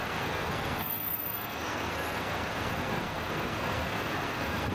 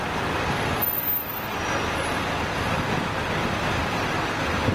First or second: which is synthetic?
first